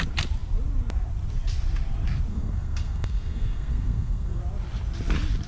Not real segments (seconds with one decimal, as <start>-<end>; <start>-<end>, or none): 2.3-4.4